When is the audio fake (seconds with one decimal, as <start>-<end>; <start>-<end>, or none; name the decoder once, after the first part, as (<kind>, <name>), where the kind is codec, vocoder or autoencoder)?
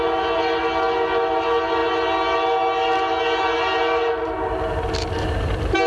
none